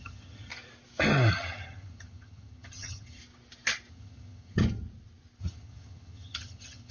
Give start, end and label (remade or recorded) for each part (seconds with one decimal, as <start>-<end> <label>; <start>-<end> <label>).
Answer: 0.0-0.5 remade; 0.5-1.3 recorded; 1.3-3.2 remade; 3.2-3.9 recorded; 3.9-4.6 remade; 4.6-5.4 recorded; 5.4-6.9 remade